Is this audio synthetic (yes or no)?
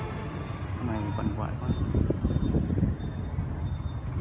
no